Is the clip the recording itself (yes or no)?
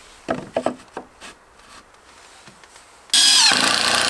yes